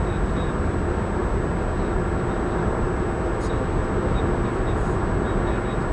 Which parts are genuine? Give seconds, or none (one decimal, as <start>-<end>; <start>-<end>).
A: 0.0-5.9